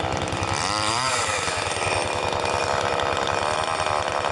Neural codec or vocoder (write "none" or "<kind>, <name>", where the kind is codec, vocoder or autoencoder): vocoder, BigVGAN v2